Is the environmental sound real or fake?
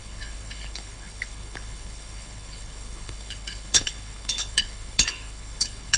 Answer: fake